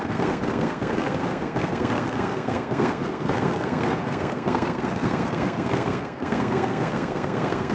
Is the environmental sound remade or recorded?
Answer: remade